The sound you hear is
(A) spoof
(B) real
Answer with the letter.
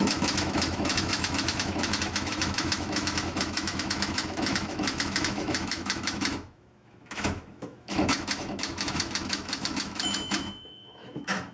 A